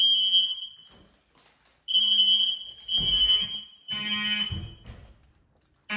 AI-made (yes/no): no